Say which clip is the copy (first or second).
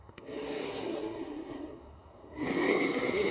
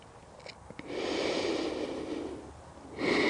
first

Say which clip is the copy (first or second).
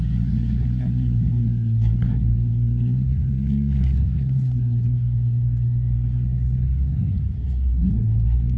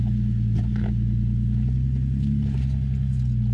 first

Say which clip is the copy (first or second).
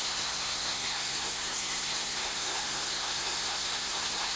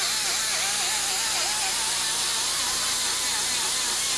first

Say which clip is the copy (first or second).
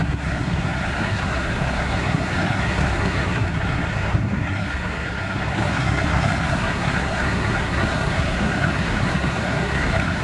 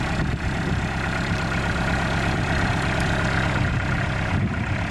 first